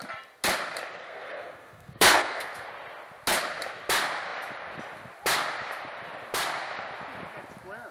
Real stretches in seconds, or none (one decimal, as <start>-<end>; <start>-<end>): 0.0-1.0; 2.7-7.9